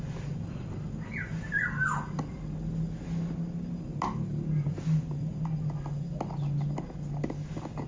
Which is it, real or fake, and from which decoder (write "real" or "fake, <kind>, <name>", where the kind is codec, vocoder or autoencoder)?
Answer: real